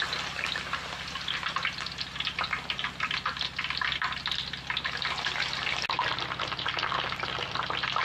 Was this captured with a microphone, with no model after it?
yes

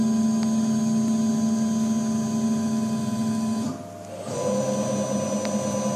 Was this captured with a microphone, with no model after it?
yes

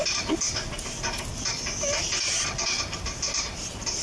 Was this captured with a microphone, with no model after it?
yes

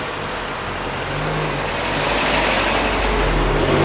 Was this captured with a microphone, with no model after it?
yes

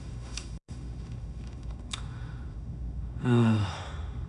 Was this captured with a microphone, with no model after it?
no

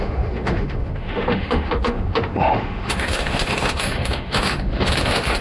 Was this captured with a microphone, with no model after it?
no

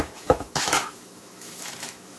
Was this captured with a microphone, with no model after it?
no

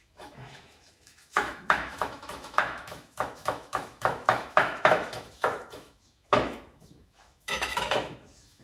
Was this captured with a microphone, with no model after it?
no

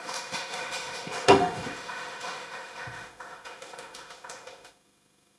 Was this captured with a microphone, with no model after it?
no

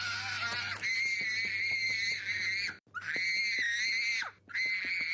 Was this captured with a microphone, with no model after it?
yes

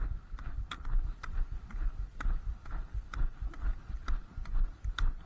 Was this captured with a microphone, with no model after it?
yes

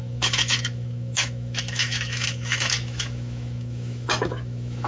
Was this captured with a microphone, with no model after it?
no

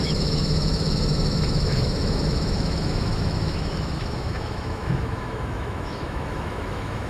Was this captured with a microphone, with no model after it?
no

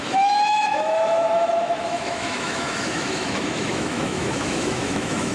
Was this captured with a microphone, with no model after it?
no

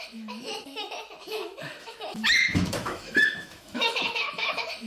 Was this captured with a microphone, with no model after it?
no